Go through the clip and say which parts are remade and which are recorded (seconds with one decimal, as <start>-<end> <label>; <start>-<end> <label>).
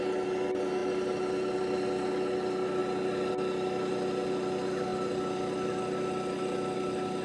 0.0-7.2 recorded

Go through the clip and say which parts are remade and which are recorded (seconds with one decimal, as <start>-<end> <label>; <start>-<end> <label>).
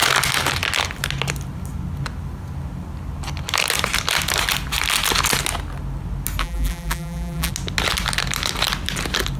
0.0-6.4 recorded; 6.4-7.5 remade; 7.5-9.4 recorded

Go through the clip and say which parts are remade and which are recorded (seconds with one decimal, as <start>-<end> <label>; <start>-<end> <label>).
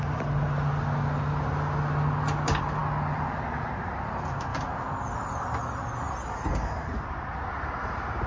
0.0-8.3 recorded